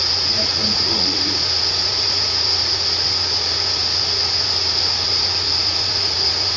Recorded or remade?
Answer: remade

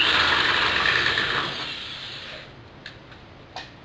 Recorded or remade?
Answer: recorded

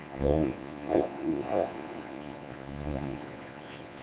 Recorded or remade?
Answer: remade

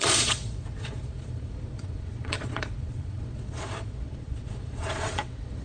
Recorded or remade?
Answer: remade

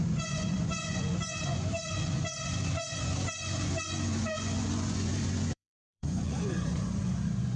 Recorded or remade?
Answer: remade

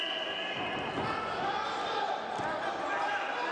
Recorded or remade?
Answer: recorded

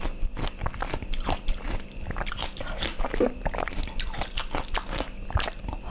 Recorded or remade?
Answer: recorded